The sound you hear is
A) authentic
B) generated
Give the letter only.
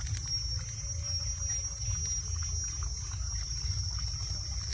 A